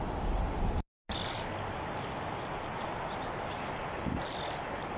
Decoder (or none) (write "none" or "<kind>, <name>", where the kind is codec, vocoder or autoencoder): none